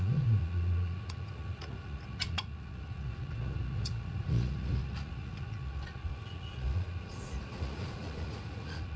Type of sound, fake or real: fake